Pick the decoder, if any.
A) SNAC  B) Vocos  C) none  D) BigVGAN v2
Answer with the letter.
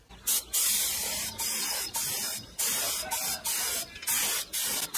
C